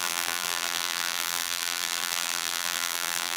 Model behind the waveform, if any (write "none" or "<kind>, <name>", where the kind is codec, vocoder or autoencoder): vocoder, BigVGAN v2